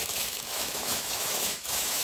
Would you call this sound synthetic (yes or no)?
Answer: yes